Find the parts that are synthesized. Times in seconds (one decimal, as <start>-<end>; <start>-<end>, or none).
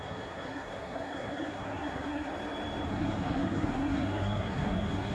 0.0-2.3; 2.9-5.1